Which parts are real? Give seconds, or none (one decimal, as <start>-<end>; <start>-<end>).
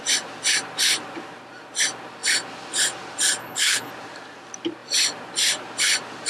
0.0-3.4; 3.9-6.3